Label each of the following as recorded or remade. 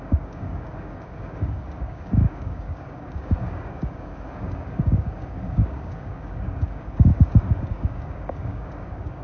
remade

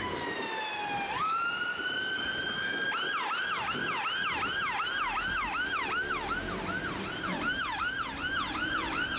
recorded